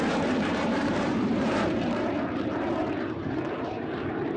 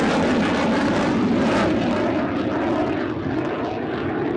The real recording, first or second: second